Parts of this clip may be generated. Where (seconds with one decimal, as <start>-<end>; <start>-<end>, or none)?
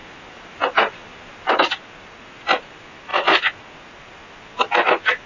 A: none